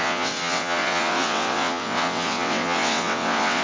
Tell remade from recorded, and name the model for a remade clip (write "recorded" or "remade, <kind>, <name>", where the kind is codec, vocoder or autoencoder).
remade, vocoder, WaveNeXt